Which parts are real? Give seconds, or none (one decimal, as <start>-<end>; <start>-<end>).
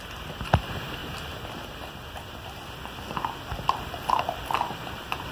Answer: 1.0-1.5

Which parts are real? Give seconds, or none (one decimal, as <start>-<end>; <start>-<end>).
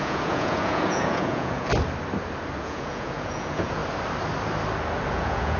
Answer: 1.7-2.6; 3.8-5.1